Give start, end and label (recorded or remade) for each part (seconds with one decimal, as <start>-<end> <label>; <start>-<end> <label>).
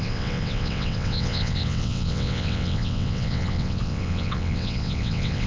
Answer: 0.0-5.5 remade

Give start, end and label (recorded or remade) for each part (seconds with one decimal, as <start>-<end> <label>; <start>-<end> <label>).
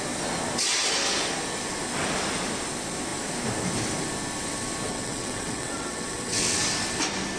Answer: 0.0-4.9 recorded; 4.9-6.6 remade; 6.6-7.4 recorded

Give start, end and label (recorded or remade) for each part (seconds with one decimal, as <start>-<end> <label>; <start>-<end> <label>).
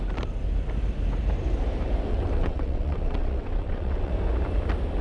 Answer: 0.0-2.1 recorded; 2.1-4.1 remade; 4.1-5.0 recorded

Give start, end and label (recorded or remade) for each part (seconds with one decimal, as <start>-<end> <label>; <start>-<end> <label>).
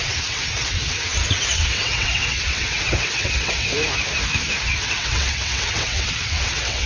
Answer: 0.0-3.7 remade; 3.7-4.6 recorded; 4.6-6.9 remade